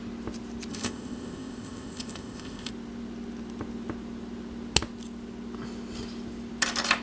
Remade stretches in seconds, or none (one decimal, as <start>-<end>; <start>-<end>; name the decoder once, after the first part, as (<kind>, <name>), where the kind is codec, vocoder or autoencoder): 0.7-2.7 (codec, ZipCodec)